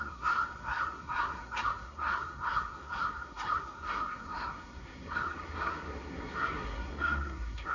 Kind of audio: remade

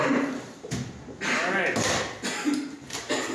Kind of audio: recorded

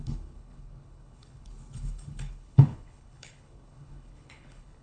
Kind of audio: remade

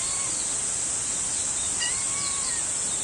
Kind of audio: recorded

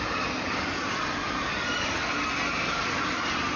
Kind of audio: recorded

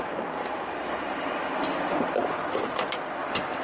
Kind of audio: recorded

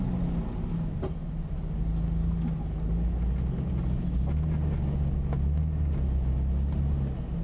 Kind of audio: recorded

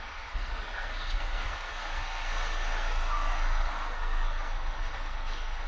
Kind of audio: remade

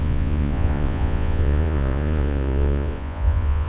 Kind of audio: remade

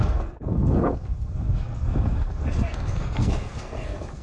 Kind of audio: remade